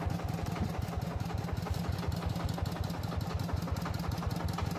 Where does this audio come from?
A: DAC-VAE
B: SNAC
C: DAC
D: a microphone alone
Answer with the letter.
D